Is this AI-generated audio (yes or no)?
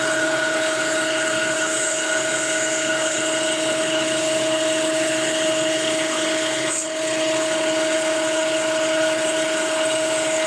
yes